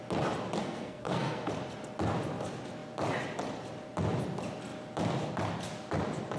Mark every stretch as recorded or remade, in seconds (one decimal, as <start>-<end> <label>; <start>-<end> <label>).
0.0-0.6 recorded; 0.6-1.5 remade; 1.5-6.4 recorded